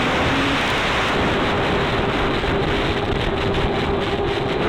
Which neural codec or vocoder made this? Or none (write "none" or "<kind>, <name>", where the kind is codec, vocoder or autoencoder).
none